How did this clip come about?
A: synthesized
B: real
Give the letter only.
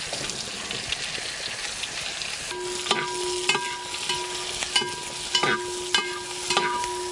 B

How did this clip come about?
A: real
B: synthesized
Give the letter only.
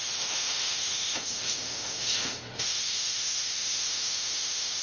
B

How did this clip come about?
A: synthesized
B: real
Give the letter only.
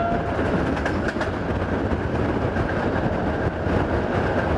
B